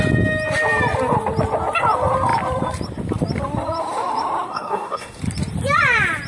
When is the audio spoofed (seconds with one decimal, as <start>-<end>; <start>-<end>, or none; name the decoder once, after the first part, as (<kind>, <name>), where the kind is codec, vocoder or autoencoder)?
4.5-5.2 (codec, SNAC)